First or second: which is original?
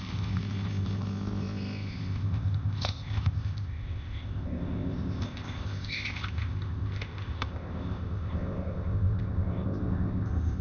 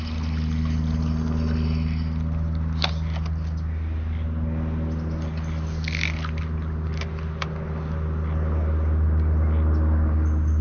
second